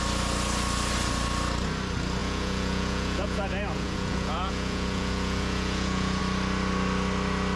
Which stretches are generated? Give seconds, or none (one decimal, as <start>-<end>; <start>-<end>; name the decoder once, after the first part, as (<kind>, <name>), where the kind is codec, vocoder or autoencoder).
2.2-6.2 (vocoder, Vocos)